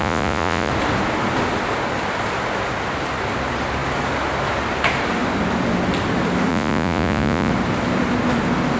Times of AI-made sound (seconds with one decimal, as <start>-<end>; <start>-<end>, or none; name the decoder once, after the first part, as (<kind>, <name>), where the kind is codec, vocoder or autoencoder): 0.0-0.7 (vocoder, Vocos); 6.5-7.5

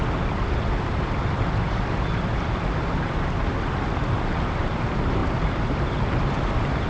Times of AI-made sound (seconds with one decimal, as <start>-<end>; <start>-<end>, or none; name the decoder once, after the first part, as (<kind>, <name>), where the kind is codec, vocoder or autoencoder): none

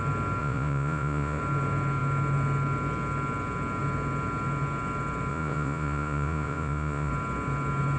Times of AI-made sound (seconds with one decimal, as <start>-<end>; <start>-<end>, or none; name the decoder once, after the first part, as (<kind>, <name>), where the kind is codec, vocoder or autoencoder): 0.4-1.4 (vocoder, Vocos); 5.3-7.1

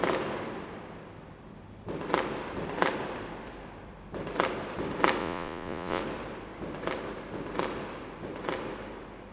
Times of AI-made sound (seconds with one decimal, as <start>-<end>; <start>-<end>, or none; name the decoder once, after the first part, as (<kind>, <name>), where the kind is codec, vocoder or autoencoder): 5.2-6.0 (vocoder, Vocos)

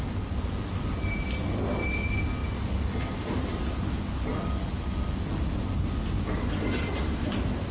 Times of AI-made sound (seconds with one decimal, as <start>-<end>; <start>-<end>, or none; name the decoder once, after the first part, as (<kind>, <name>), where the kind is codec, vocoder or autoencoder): none

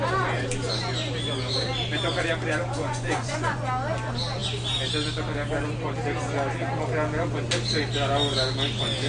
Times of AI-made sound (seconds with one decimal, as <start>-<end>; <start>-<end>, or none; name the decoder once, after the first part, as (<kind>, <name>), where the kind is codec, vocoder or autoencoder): 2.8-3.6 (vocoder, Vocos)

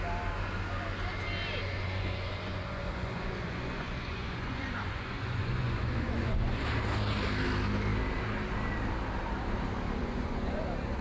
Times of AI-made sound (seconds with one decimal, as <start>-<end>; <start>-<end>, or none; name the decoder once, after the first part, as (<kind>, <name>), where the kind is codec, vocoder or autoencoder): 1.6-6.6 (vocoder, Vocos); 10.0-10.6